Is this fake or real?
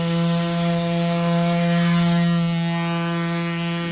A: real